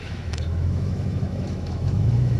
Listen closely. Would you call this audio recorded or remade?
remade